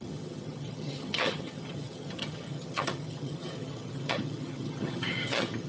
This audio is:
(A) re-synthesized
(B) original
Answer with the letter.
A